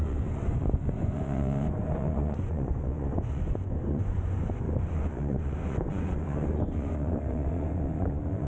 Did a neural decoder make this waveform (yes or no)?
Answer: yes